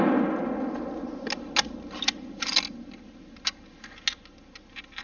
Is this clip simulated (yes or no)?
no